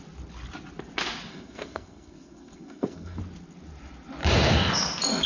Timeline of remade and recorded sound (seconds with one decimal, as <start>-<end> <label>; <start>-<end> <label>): 0.0-1.3 recorded; 1.3-3.2 remade; 3.2-5.3 recorded

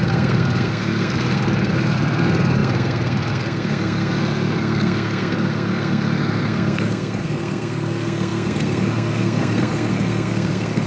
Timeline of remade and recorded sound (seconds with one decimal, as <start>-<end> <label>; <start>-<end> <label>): 0.0-10.9 remade

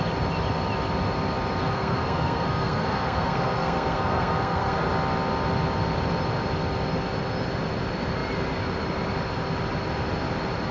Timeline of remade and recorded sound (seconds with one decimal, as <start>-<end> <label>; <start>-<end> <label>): 0.0-1.6 recorded; 1.6-4.9 remade; 4.9-10.7 recorded

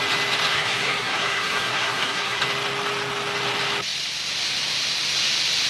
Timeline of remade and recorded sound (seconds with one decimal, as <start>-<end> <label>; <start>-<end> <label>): 0.0-0.5 recorded; 0.5-2.4 remade; 2.4-5.7 recorded

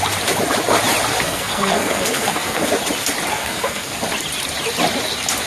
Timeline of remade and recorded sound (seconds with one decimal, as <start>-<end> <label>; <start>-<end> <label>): 0.0-1.1 recorded; 1.1-2.7 remade; 2.7-3.3 recorded; 3.3-4.0 remade; 4.0-5.5 recorded

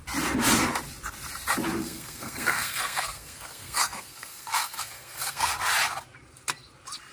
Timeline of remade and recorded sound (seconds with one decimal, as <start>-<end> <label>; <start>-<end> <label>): 0.0-1.8 recorded; 1.8-5.5 remade; 5.5-7.1 recorded

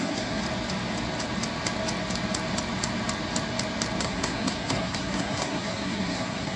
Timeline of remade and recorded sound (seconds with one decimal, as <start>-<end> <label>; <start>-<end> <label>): 0.0-0.4 remade; 0.4-4.0 recorded; 4.0-6.6 remade

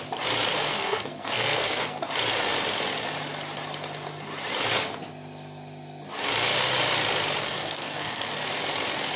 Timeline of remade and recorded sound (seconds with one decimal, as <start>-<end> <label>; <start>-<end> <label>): 0.0-0.7 recorded; 0.7-2.0 remade; 2.0-7.4 recorded; 7.4-8.3 remade; 8.3-9.2 recorded